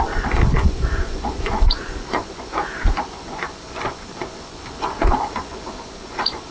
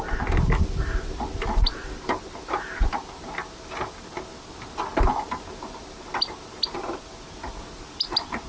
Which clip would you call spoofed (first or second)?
first